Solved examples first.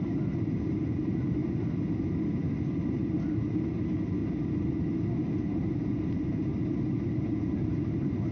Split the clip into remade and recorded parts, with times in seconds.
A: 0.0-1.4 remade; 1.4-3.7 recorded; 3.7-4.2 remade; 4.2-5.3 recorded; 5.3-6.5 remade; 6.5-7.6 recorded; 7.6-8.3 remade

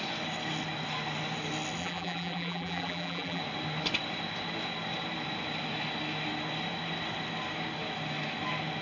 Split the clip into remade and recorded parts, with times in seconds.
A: 0.0-1.8 recorded; 1.8-3.4 remade; 3.4-8.8 recorded

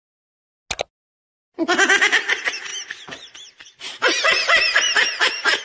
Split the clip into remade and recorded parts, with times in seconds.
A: 0.0-2.7 recorded; 2.7-5.6 remade

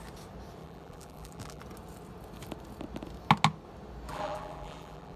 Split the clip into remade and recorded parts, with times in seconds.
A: 0.0-0.6 recorded; 0.6-1.6 remade; 1.6-4.1 recorded; 4.1-5.2 remade

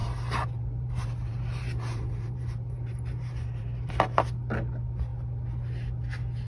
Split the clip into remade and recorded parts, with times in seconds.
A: 0.0-3.9 remade; 3.9-6.5 recorded

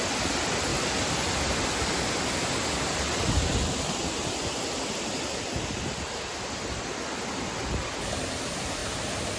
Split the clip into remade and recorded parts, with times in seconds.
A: 0.0-0.7 recorded; 0.7-1.4 remade; 1.4-9.4 recorded

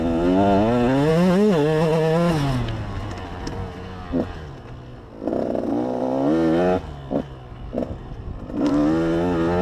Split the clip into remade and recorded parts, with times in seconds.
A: 0.0-8.0 recorded; 8.0-8.7 remade; 8.7-9.6 recorded